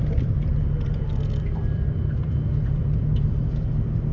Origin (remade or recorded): remade